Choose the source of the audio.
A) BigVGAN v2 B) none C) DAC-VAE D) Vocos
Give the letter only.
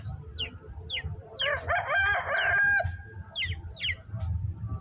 A